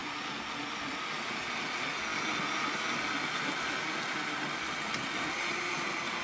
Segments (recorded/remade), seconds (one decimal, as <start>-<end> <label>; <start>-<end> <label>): 0.0-6.2 recorded